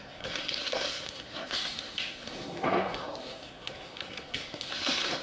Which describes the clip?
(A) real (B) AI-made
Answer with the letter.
B